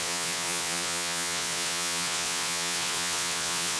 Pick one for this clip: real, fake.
fake